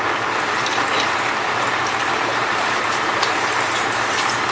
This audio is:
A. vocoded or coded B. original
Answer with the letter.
A